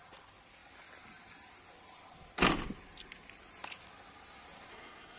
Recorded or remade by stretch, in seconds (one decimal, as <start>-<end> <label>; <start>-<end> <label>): 0.0-4.7 recorded; 4.7-5.2 remade